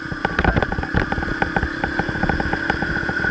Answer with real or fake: real